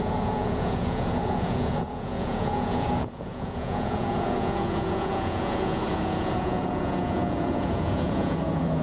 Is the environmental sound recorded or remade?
remade